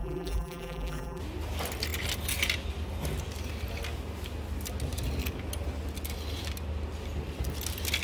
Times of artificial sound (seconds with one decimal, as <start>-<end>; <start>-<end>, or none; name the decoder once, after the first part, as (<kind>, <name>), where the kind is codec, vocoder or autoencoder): 0.0-1.2 (vocoder, BigVGAN v2)